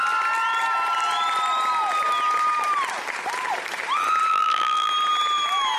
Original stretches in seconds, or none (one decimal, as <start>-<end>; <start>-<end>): 0.0-4.3; 4.9-5.8